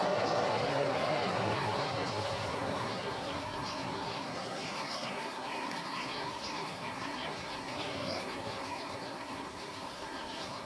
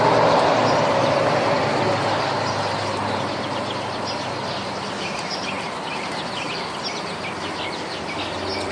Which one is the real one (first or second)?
second